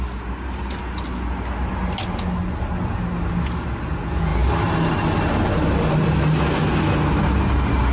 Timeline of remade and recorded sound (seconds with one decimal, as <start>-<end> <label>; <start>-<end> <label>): 0.0-7.9 recorded